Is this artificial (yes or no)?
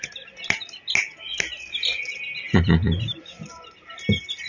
no